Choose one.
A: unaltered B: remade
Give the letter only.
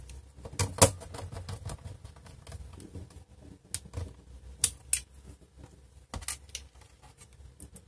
A